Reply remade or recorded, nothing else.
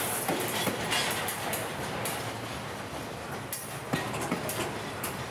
recorded